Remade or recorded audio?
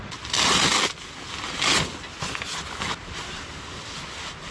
recorded